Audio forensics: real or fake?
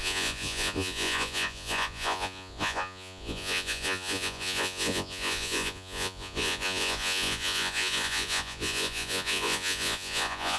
fake